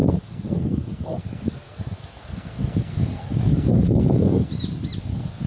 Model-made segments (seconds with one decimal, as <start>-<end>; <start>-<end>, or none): 0.0-4.5; 5.0-5.5